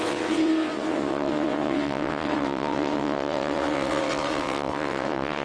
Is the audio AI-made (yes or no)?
yes